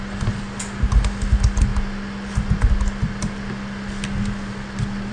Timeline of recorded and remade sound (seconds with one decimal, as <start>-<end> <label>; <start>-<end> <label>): 0.0-5.1 recorded